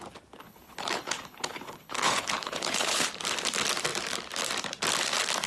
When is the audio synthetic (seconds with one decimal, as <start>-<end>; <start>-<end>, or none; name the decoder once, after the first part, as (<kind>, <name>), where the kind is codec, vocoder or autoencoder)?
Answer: 0.4-3.1 (codec, HILCodec)